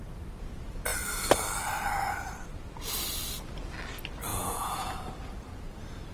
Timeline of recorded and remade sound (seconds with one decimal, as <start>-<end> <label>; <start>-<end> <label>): 0.0-4.3 recorded; 4.3-5.1 remade; 5.1-6.1 recorded